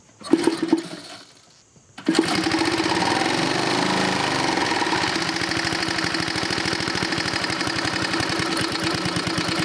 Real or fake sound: real